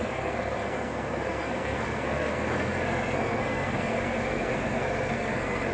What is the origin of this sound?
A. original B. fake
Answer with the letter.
B